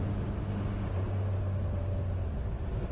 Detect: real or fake real